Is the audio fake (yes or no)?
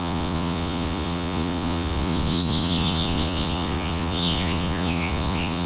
yes